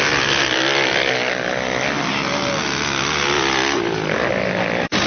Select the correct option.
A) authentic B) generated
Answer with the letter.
A